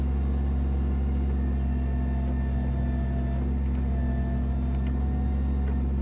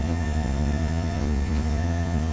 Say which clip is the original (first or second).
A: first